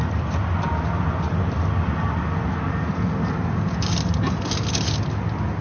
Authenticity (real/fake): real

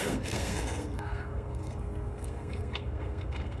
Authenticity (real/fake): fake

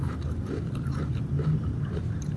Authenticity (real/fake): fake